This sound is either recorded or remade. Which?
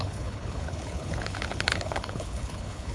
remade